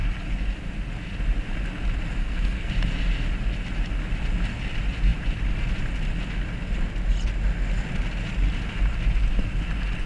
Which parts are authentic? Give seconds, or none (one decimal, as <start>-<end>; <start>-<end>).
0.0-2.2; 2.7-10.1